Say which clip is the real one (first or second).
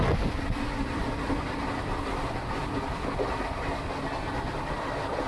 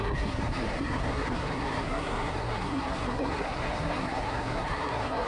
first